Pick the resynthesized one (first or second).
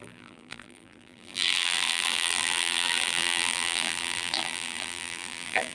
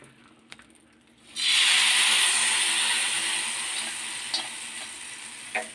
first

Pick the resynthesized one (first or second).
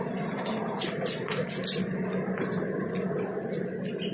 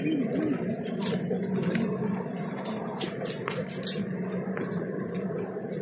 second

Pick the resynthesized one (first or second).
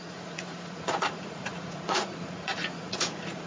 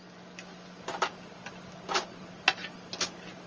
first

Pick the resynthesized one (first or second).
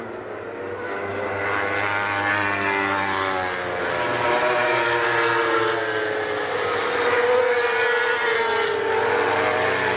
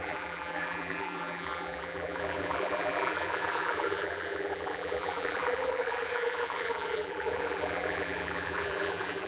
second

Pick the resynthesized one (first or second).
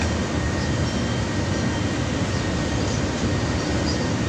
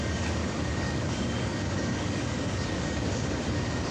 second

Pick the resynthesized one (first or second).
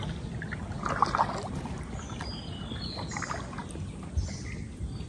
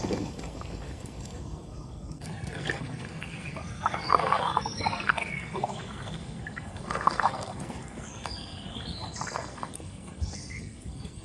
second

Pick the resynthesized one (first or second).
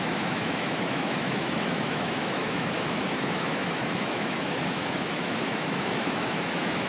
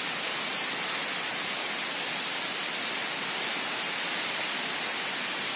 first